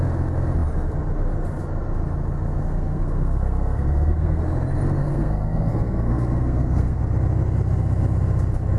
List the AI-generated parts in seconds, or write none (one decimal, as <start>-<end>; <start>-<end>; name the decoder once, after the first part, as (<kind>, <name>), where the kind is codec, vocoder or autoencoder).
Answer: 2.6-4.4 (codec, SNAC); 5.0-7.0